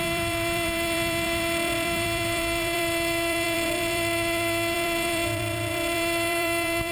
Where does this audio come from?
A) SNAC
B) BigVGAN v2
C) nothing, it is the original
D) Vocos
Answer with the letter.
B